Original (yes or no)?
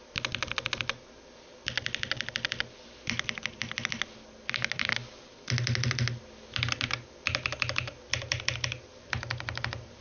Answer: yes